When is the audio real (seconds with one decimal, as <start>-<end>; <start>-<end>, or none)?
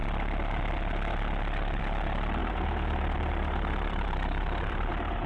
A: 0.0-2.4